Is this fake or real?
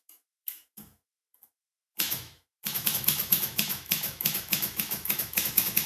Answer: fake